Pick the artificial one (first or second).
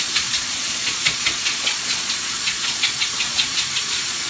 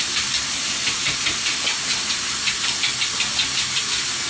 first